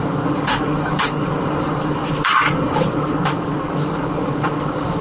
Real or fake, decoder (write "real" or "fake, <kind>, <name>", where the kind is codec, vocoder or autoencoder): fake, codec, DAC